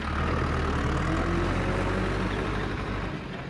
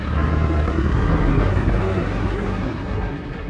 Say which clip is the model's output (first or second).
second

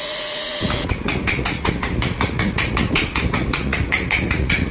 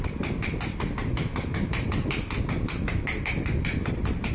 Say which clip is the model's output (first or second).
first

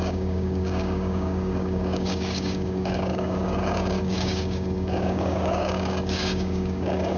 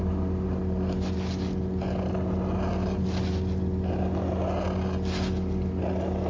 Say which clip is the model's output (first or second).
first